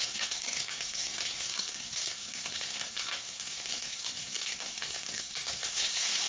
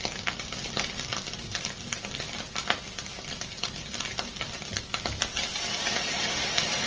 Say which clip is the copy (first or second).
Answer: first